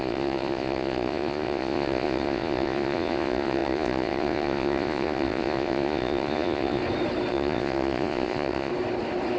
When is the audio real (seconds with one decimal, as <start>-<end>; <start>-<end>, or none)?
6.8-7.3; 8.7-9.4